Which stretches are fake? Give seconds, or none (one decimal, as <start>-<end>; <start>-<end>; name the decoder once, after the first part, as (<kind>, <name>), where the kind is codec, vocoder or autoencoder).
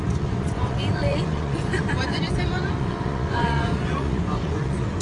0.0-5.0 (vocoder, Vocos)